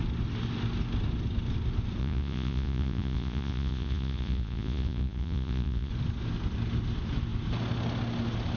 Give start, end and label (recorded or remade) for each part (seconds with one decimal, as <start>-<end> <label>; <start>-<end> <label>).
0.0-2.0 recorded; 2.0-5.9 remade; 5.9-8.6 recorded